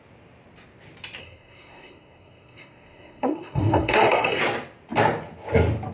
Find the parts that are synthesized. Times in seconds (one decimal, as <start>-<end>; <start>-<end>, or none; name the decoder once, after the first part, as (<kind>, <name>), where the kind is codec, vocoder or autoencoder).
1.2-4.4 (codec, SNAC)